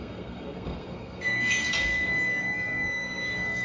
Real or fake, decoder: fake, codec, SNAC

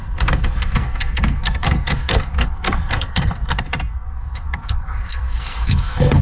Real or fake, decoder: fake, codec, SNAC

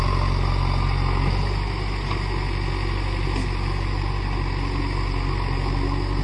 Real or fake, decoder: real